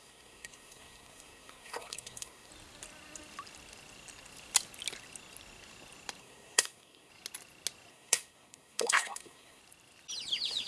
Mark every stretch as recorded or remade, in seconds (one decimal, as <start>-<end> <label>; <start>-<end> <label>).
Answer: 0.0-2.5 remade; 2.5-6.2 recorded; 6.2-7.1 remade; 7.1-7.9 recorded; 7.9-9.6 remade; 9.6-10.7 recorded